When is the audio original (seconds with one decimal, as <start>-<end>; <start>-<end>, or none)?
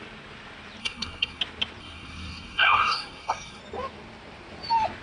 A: 0.0-0.8; 1.4-1.8; 3.6-5.0